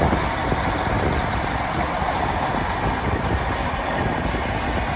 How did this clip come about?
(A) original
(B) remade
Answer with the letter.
A